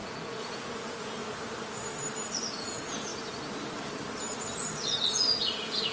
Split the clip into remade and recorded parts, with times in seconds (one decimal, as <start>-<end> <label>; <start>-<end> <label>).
0.0-1.2 remade; 1.2-2.6 recorded; 2.6-3.1 remade; 3.1-5.1 recorded; 5.1-5.9 remade